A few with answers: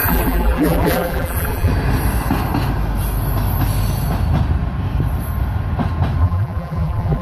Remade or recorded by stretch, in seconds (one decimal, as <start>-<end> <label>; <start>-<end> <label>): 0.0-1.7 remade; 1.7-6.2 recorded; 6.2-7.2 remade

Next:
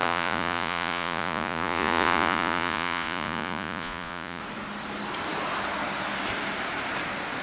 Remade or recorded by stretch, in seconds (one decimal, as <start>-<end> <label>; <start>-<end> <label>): 0.0-4.4 remade; 4.4-7.4 recorded

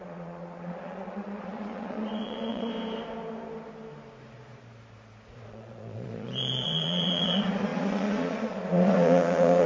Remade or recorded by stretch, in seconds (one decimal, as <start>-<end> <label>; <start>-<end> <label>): 0.0-2.7 remade; 2.7-5.5 recorded; 5.5-9.7 remade

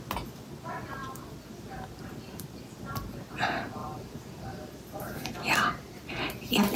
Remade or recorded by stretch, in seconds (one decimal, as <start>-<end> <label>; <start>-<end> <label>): 0.0-3.8 recorded; 3.8-6.1 remade; 6.1-6.8 recorded

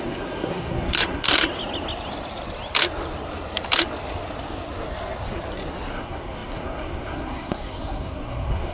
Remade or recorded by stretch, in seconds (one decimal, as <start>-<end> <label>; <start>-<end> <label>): 0.0-1.5 remade; 1.5-5.9 recorded; 5.9-8.7 remade